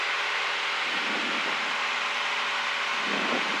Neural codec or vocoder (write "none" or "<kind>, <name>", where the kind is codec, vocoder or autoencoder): none